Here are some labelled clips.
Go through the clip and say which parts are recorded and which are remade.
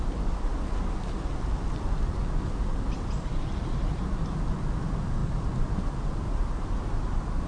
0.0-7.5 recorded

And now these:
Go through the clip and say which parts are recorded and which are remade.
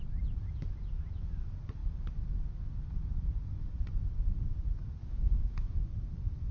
0.0-0.5 recorded; 0.5-1.2 remade; 1.2-5.0 recorded; 5.0-5.8 remade; 5.8-6.5 recorded